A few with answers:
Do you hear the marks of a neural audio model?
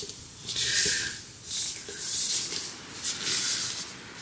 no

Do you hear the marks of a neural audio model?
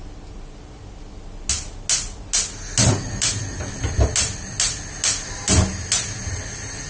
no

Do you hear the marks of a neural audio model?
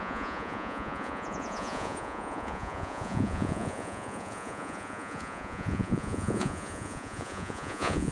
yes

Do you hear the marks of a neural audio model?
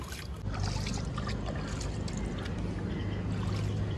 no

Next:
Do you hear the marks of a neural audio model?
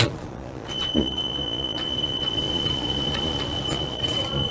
yes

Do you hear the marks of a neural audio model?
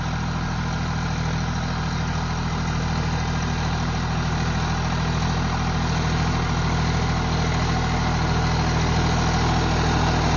no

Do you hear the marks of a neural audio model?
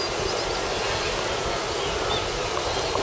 no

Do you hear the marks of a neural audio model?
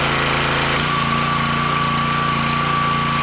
no